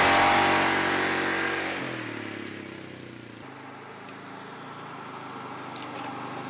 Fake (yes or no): no